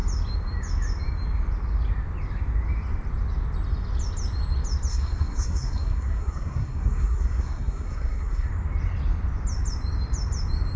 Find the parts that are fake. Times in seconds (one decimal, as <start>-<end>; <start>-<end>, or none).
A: 4.9-8.5